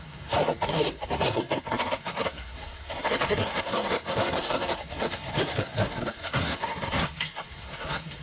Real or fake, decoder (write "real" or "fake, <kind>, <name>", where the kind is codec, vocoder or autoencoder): fake, codec, SNAC